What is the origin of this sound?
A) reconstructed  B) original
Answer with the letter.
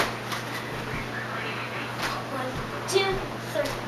B